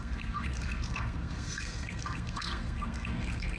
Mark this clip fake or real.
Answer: fake